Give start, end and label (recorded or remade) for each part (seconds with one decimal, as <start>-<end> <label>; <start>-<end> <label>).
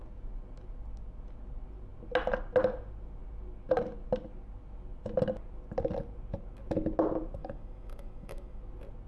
0.0-7.4 recorded; 7.4-8.6 remade; 8.6-9.1 recorded